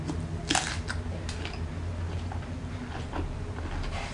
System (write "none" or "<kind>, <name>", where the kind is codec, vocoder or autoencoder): none